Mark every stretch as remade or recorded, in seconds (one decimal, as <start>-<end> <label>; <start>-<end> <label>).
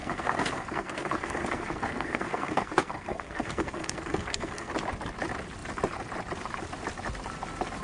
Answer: 0.0-4.7 remade; 4.7-7.8 recorded